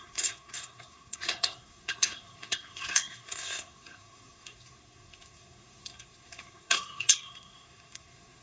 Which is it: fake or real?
fake